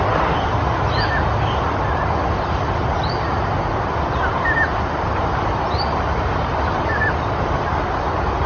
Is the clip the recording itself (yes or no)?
yes